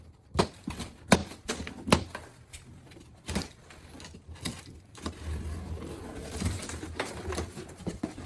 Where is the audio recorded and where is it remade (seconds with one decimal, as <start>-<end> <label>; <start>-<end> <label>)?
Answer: 0.0-8.3 recorded